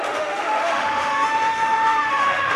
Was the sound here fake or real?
fake